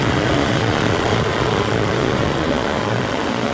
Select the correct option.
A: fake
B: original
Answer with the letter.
A